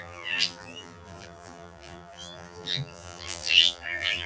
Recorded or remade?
remade